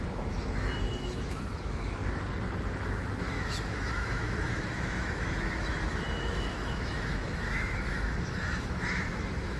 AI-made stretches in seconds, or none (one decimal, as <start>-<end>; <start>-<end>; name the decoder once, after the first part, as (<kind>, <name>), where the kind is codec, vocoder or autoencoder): 0.0-2.0 (autoencoder, DAC-VAE); 2.9-9.6